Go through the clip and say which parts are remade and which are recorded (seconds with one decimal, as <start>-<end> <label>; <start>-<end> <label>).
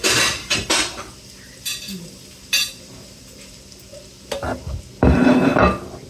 0.0-0.8 remade; 0.8-1.7 recorded; 1.7-3.6 remade; 3.6-6.1 recorded